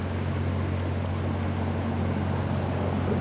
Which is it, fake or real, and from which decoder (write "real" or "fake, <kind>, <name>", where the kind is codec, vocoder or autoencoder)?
real